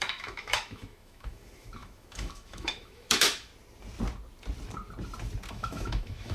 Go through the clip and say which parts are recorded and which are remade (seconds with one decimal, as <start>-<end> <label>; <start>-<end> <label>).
0.0-3.5 remade; 3.5-5.5 recorded; 5.5-6.3 remade